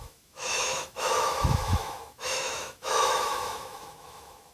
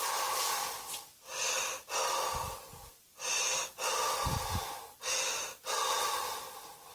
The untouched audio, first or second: second